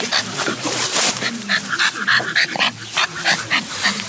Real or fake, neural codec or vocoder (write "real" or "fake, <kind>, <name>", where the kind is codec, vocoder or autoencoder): real